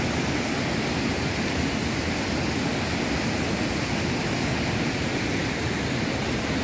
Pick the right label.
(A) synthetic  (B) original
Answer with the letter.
B